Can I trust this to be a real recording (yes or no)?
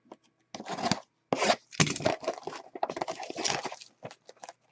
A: yes